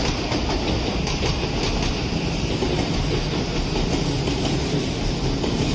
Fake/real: real